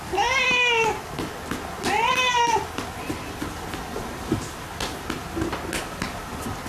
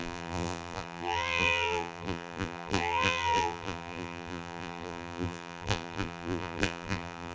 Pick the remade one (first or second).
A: second